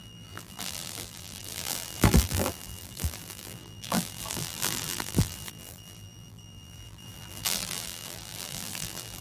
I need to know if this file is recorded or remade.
remade